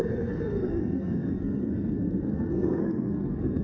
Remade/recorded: remade